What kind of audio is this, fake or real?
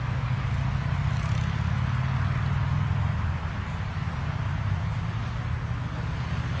real